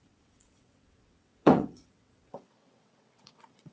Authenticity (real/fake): fake